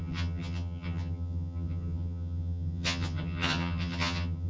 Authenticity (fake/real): fake